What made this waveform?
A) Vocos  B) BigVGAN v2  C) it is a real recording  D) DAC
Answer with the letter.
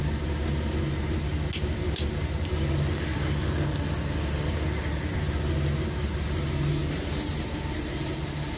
C